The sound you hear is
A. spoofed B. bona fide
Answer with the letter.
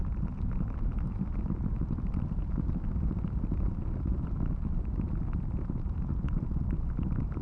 B